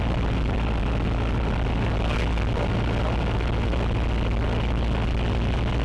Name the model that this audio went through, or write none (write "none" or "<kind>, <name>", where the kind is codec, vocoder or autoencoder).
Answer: none